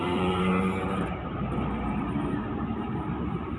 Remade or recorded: remade